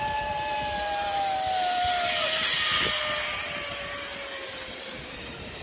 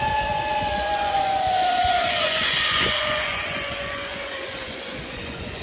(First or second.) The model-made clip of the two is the second